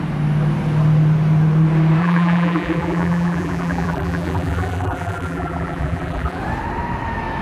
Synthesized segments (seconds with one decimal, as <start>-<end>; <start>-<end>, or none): 2.0-6.4